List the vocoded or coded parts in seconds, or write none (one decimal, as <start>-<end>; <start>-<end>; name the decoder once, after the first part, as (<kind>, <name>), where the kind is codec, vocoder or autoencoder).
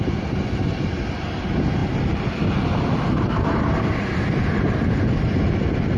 none